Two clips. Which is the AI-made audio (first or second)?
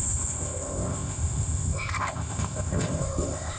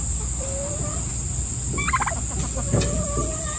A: first